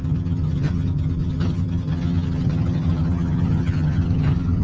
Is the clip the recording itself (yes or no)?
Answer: no